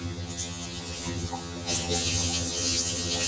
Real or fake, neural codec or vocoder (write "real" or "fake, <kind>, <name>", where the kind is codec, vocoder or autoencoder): fake, vocoder, HiFi-GAN